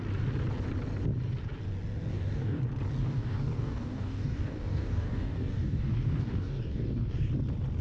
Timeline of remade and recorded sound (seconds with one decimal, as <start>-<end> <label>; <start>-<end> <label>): 0.0-2.1 recorded; 2.1-2.6 remade; 2.6-3.0 recorded; 3.0-7.3 remade; 7.3-7.8 recorded